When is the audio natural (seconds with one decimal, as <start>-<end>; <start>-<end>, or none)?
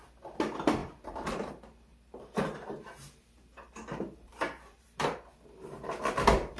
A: 0.0-0.8; 1.5-1.9; 5.9-6.6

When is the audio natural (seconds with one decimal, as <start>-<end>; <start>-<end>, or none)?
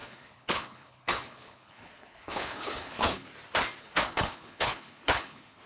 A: 3.3-3.8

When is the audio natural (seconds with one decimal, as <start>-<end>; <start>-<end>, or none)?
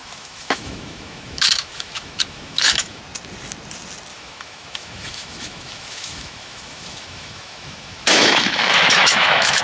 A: 3.0-4.1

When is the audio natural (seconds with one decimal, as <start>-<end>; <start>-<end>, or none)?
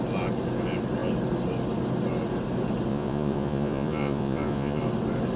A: 0.0-2.9; 4.8-5.4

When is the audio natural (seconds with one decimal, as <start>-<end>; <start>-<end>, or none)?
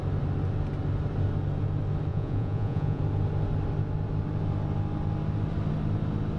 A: 0.0-2.1; 3.0-6.4